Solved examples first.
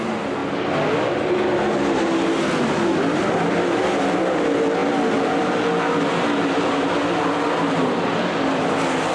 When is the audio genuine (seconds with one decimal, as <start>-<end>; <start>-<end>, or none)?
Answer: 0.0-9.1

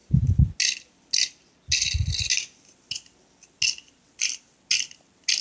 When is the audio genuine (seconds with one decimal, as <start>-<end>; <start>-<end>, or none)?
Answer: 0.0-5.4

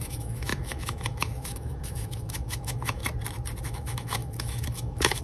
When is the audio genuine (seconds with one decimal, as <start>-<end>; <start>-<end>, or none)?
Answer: 3.0-3.6

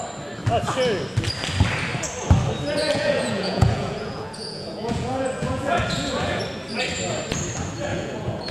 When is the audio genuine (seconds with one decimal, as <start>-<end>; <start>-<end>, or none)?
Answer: 0.0-2.8; 6.4-7.9

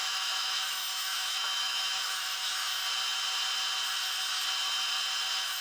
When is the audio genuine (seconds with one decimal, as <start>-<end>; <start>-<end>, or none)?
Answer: 2.7-5.6

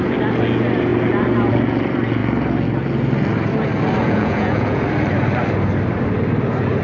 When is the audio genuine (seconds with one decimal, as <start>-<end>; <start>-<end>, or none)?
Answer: 0.0-4.0; 4.8-6.8

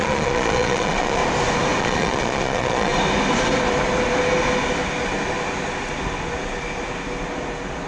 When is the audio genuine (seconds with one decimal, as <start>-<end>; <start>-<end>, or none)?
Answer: 1.2-1.8; 2.9-7.9